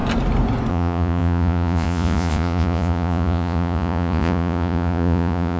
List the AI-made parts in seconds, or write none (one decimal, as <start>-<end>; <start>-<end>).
0.7-5.6